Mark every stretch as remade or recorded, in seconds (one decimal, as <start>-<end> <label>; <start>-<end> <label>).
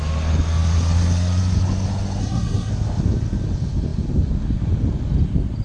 0.0-2.2 recorded; 2.2-2.7 remade; 2.7-5.6 recorded